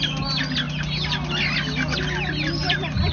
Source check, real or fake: real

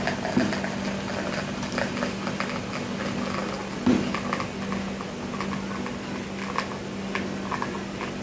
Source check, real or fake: real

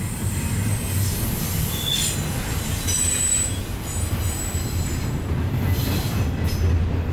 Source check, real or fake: real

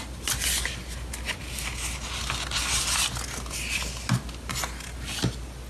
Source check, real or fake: real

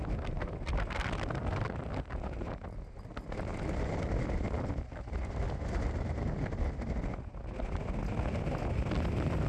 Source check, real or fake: real